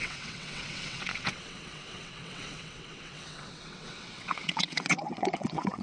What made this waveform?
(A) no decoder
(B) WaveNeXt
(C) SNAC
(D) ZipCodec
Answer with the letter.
B